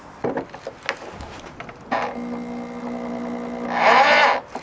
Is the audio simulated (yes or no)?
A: no